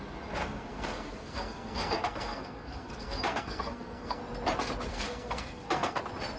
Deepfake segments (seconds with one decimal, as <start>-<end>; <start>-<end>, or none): 0.4-4.2; 4.9-6.0